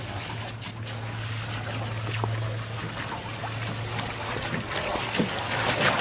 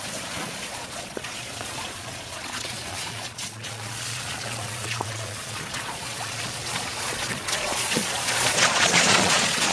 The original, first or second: first